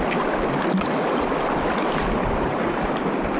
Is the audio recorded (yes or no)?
yes